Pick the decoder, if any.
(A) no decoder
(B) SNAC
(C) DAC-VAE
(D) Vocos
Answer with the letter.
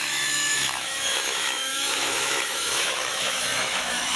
C